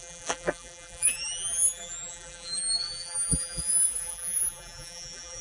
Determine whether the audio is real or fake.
fake